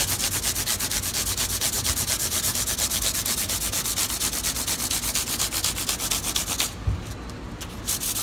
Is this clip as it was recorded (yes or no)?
yes